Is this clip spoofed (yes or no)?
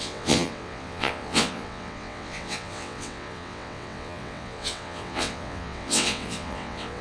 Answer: yes